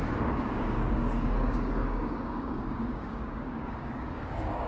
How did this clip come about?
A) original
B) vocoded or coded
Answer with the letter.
B